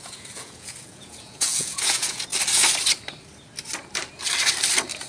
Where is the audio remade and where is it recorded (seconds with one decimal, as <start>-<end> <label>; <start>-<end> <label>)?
0.0-2.3 remade; 2.3-5.1 recorded